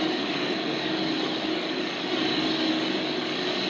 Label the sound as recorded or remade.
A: remade